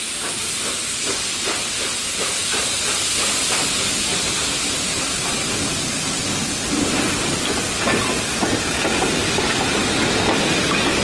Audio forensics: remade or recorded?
recorded